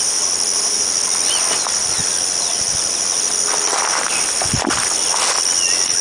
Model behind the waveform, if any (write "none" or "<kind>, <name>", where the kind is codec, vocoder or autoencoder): none